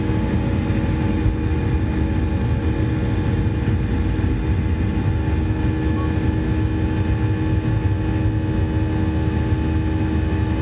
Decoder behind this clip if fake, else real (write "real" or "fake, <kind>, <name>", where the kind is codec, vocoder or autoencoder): real